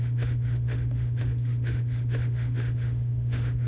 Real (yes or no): no